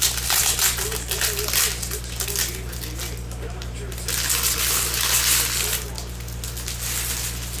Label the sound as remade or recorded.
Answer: recorded